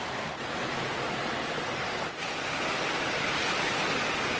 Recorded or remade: recorded